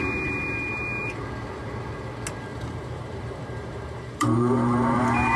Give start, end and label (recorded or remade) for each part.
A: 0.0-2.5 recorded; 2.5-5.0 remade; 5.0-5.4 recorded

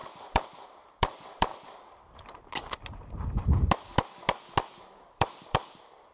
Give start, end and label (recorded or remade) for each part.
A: 0.0-1.5 remade; 1.5-4.8 recorded; 4.8-6.1 remade